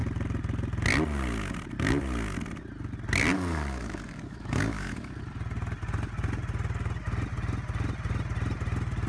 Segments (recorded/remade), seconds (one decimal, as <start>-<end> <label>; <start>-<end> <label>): 0.0-3.3 recorded; 3.3-5.2 remade; 5.2-9.1 recorded